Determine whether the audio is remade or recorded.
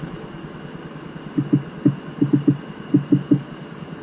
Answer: recorded